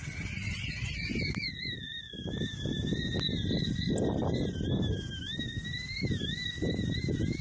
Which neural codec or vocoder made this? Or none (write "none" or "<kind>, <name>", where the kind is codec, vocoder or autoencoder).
none